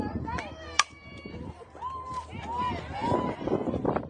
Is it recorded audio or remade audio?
recorded